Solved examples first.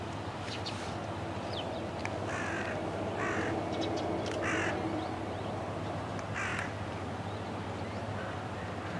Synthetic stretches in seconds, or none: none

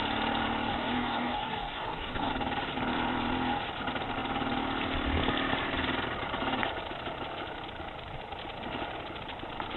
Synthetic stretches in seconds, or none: 0.7-2.3 (codec, DAC)

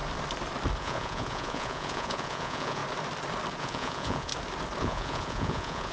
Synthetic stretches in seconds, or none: 0.8-2.8 (vocoder, Vocos); 3.6-4.3; 4.8-5.9

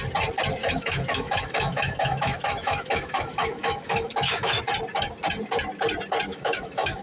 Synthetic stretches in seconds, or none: 0.6-4.6 (autoencoder, DAC-VAE); 6.3-7.0

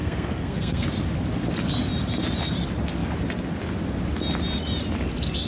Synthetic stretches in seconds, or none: 0.0-0.9 (codec, SNAC)

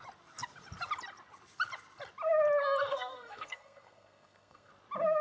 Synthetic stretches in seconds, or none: 2.9-4.7 (codec, SNAC)

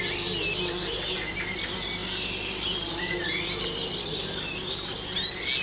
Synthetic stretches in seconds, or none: none